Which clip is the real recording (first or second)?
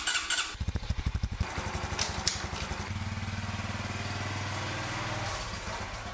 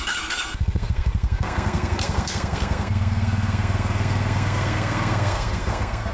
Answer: first